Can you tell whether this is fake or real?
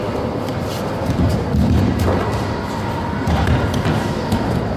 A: real